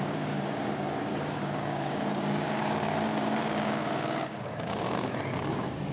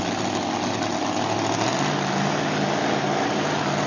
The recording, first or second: second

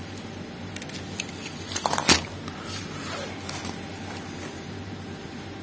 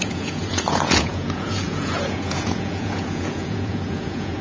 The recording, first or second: first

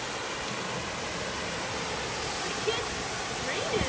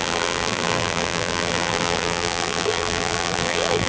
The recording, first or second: first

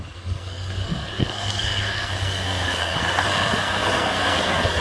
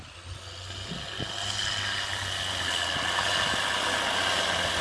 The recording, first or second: second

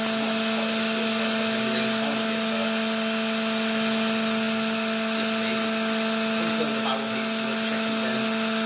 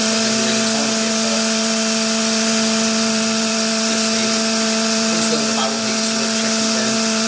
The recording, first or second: first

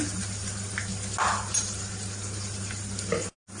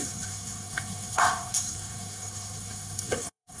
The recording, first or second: first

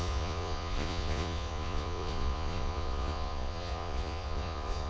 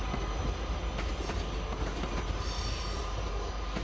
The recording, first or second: second